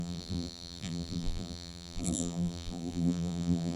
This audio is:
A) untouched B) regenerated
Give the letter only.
B